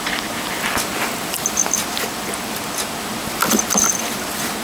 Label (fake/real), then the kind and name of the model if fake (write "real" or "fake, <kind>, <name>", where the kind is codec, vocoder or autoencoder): fake, vocoder, BigVGAN v2